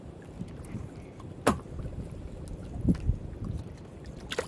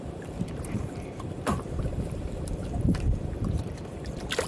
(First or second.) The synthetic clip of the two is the second